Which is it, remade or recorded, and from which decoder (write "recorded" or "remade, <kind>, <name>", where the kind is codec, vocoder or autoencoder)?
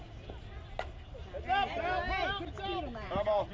recorded